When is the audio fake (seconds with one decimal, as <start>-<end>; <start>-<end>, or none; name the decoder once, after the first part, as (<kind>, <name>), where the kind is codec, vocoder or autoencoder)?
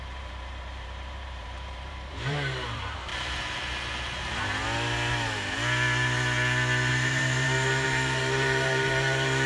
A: 0.0-3.1 (vocoder, BigVGAN v2); 6.9-9.5